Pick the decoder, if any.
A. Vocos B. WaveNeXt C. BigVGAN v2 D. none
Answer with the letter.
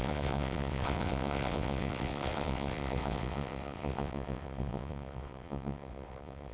B